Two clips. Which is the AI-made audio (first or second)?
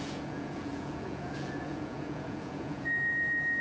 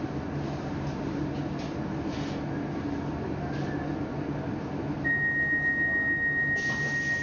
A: first